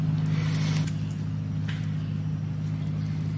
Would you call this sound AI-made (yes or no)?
no